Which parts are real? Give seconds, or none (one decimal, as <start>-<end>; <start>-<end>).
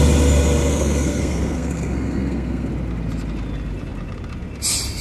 0.0-0.7; 2.7-5.0